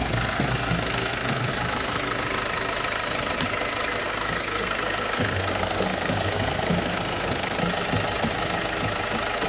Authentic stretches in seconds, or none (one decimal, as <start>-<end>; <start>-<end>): 1.5-4.0; 7.6-9.5